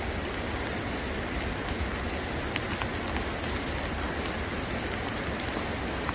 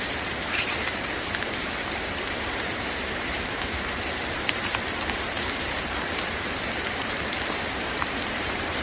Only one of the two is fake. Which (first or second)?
second